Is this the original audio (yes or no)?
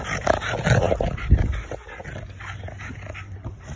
yes